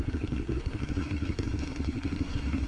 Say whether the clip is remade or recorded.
remade